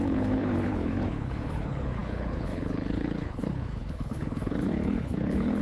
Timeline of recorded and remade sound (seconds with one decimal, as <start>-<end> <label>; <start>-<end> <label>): 0.0-5.6 remade